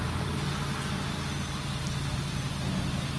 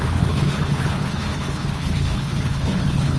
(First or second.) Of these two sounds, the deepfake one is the second